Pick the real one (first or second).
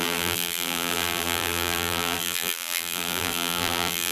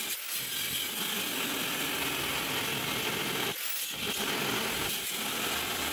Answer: second